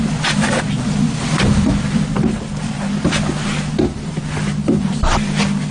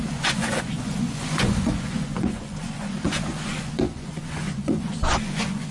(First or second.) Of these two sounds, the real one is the first